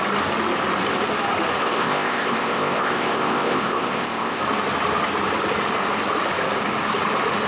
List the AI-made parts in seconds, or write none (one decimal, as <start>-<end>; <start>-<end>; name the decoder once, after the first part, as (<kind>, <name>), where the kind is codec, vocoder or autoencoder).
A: 1.6-4.4 (codec, ZipCodec)